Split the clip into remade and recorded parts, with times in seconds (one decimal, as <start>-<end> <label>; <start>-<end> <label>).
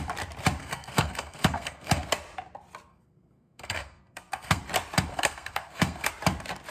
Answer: 0.0-0.6 recorded; 0.6-2.1 remade; 2.1-2.9 recorded; 2.9-4.6 remade; 4.6-5.1 recorded; 5.1-6.1 remade; 6.1-6.7 recorded